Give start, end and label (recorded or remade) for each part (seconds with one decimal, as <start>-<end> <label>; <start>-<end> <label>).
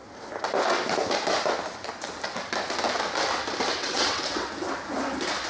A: 0.0-3.8 recorded; 3.8-4.5 remade; 4.5-5.5 recorded